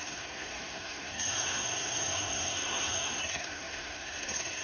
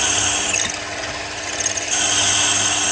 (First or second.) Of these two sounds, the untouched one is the second